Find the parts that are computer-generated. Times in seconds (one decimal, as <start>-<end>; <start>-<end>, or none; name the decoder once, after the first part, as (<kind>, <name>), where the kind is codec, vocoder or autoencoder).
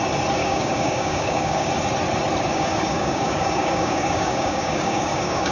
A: 0.4-1.7 (codec, DAC); 2.5-5.5